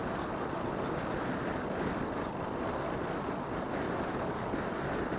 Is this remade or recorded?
recorded